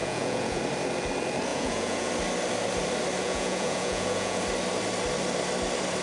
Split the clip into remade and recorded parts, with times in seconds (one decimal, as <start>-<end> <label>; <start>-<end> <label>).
0.0-0.6 remade; 0.6-1.5 recorded; 1.5-2.1 remade; 2.1-3.2 recorded; 3.2-4.4 remade; 4.4-6.0 recorded